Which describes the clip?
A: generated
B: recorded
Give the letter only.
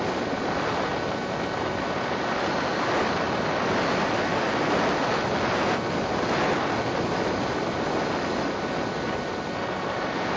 B